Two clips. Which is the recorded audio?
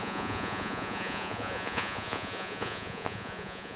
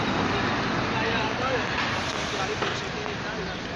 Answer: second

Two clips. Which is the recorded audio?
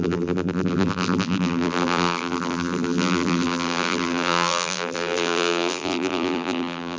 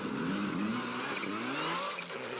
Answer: second